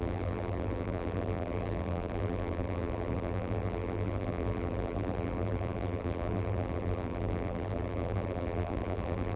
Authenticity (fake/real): fake